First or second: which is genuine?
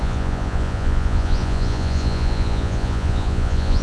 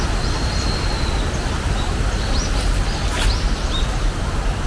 second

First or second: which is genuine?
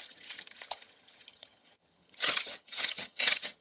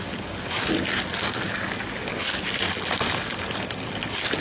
second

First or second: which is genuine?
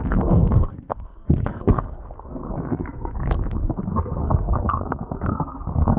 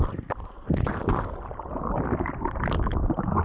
second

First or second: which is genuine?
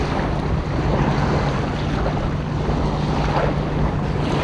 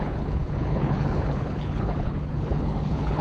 first